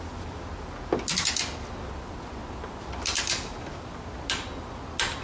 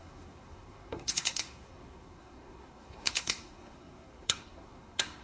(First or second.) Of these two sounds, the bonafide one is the first